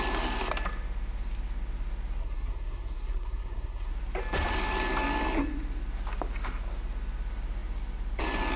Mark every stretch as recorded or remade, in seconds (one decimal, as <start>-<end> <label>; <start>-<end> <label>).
0.0-2.2 recorded; 2.2-3.9 remade; 3.9-8.6 recorded